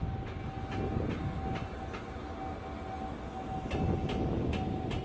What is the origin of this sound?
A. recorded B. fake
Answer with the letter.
A